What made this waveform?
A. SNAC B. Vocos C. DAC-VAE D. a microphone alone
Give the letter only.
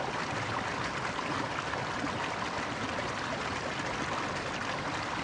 D